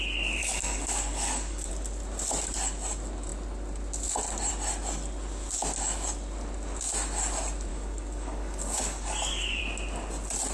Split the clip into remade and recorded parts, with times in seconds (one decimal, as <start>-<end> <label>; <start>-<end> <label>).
0.0-0.4 recorded; 0.4-1.7 remade; 1.7-7.7 recorded; 7.7-9.6 remade; 9.6-10.5 recorded